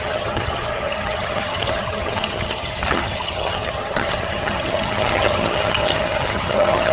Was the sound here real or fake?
fake